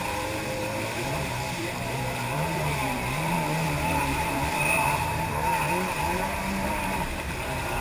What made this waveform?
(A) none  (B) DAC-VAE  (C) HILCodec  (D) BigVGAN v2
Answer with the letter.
D